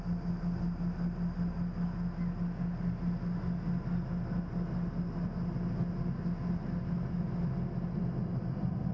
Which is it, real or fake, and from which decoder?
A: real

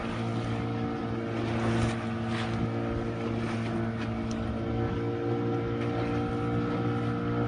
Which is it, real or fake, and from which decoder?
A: real